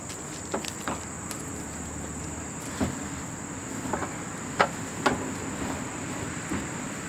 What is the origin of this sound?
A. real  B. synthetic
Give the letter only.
A